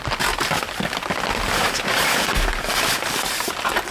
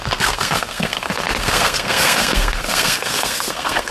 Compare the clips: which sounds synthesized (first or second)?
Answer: second